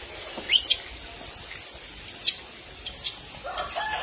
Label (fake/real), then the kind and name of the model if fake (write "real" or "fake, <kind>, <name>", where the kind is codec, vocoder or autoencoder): real